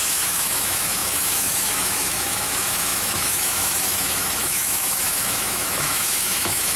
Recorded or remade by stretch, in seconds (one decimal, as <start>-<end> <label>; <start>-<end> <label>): 0.0-6.8 remade